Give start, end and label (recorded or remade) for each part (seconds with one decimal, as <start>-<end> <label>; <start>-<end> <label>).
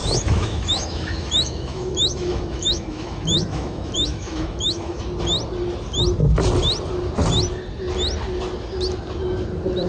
0.0-5.0 remade; 5.0-9.9 recorded